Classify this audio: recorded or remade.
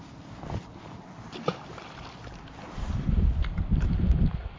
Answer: recorded